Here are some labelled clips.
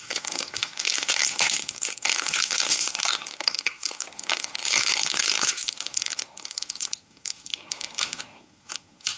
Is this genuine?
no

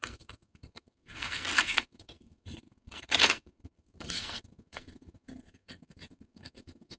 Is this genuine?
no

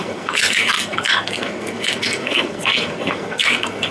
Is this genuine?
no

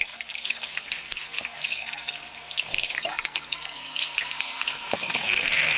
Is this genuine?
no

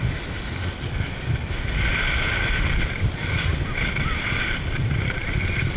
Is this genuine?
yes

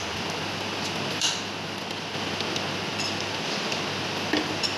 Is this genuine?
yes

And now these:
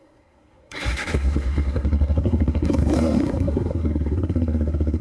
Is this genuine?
no